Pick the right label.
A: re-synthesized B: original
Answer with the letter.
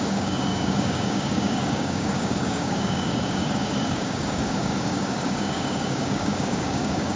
A